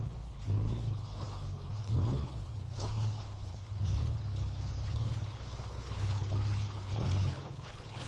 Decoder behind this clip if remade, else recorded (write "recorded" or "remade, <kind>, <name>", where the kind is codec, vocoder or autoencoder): remade, codec, HILCodec